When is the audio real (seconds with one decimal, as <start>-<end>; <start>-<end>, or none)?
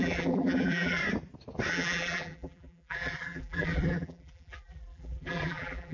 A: 1.0-1.7